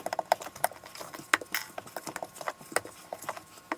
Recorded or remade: recorded